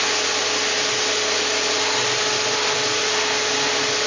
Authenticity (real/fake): real